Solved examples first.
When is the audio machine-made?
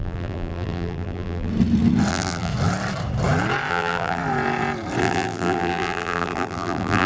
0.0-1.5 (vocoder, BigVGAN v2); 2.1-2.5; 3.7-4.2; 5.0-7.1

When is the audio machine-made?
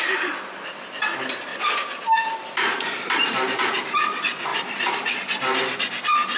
1.5-3.7 (vocoder, BigVGAN v2); 4.5-5.1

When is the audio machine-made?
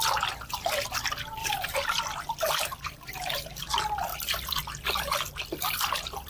1.4-3.6 (vocoder, BigVGAN v2); 4.1-4.6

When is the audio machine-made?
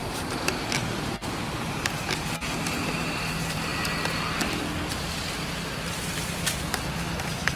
0.0-0.7 (vocoder, BigVGAN v2); 1.2-1.9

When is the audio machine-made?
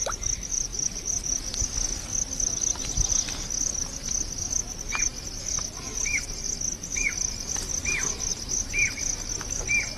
0.7-1.6 (vocoder, BigVGAN v2)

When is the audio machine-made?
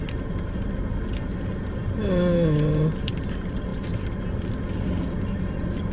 none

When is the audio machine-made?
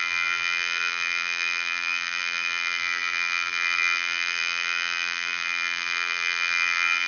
0.0-7.1 (vocoder, BigVGAN v2)